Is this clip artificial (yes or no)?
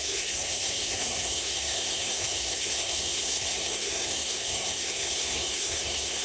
yes